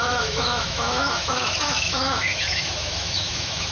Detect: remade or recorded remade